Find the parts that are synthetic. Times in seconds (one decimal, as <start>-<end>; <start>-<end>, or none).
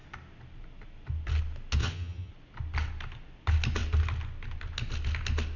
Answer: 1.8-2.3